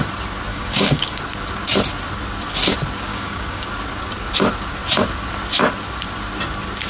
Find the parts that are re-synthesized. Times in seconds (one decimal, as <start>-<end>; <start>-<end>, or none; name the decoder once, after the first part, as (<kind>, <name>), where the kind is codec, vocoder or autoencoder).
0.5-1.2 (codec, DAC); 3.1-3.7